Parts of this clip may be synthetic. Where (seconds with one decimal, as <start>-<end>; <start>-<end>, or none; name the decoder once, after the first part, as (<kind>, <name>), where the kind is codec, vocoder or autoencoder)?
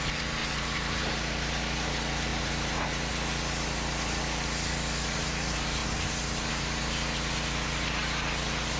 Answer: 0.4-1.1 (vocoder, BigVGAN v2); 2.3-3.1